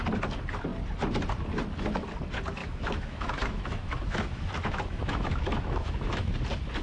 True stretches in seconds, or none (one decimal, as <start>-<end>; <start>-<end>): 0.0-2.6; 6.3-6.8